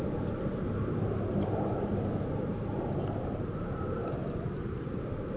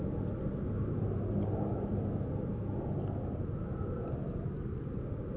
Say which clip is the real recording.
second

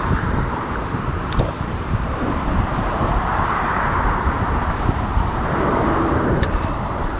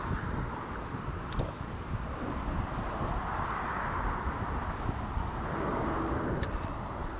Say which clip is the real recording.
second